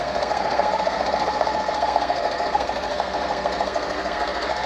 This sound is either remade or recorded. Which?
remade